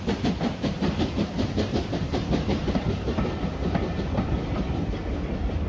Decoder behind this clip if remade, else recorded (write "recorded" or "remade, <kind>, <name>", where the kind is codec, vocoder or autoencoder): remade, vocoder, BigVGAN v2